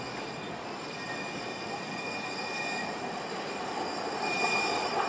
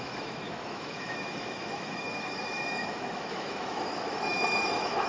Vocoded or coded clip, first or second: second